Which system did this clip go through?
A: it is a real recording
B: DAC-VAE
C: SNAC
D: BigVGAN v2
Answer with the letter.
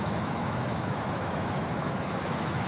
B